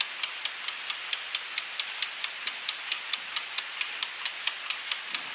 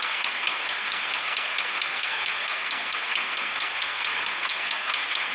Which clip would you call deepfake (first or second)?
second